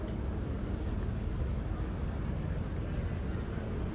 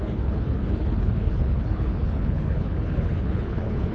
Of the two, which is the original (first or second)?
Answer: first